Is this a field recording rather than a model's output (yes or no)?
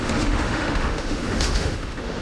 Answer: no